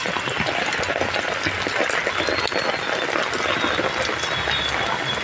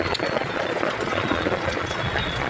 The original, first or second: first